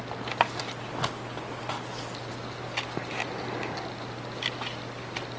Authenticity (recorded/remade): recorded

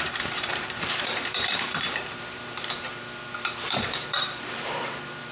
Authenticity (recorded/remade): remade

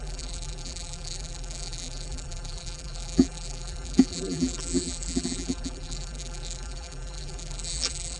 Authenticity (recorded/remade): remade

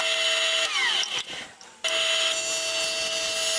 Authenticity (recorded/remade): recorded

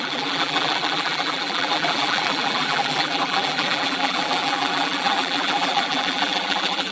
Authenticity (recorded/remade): remade